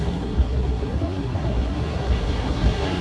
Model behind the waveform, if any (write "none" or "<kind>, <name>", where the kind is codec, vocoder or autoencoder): codec, SNAC